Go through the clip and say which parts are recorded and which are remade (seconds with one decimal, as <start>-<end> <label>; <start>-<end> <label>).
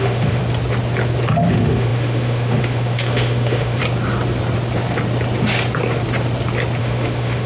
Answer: 0.0-0.4 remade; 0.4-1.5 recorded; 1.5-3.8 remade; 3.8-6.8 recorded; 6.8-7.5 remade